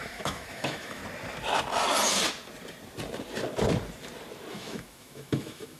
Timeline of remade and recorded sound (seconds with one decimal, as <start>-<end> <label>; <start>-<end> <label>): 0.0-1.0 remade; 1.0-4.5 recorded; 4.5-5.8 remade